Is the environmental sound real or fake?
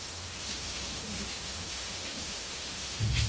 fake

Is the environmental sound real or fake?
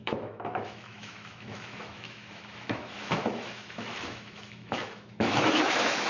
fake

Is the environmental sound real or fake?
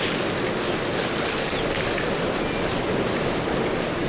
real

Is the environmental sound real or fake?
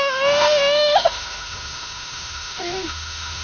fake